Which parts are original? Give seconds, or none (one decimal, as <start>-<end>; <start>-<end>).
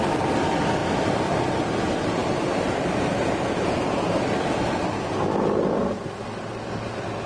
0.0-7.3